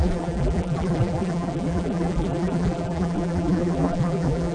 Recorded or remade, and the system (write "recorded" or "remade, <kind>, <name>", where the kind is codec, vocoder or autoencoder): remade, vocoder, BigVGAN v2